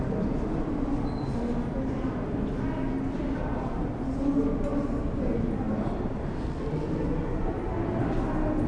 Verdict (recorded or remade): recorded